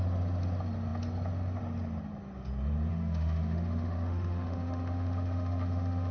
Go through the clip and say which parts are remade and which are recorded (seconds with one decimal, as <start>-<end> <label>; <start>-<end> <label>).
0.0-2.9 recorded; 2.9-6.1 remade